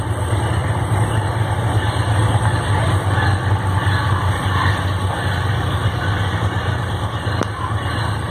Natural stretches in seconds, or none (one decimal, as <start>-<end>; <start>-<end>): 0.0-0.6; 2.3-5.8